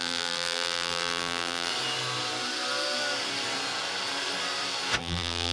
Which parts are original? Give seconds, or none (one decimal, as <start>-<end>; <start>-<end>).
1.7-5.0